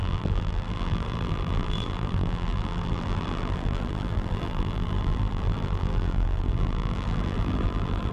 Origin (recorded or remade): remade